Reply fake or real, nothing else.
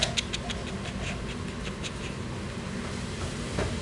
real